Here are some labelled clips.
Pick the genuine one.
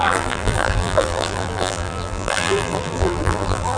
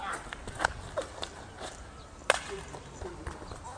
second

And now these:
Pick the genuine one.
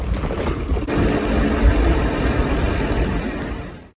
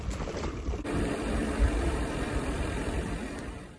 first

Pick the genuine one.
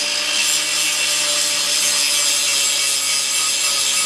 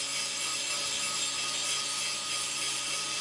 first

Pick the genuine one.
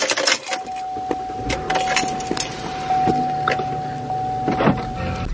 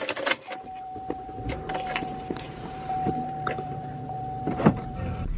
first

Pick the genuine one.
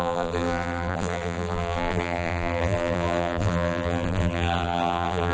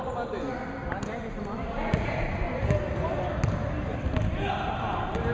second